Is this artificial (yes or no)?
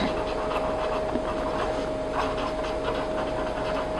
no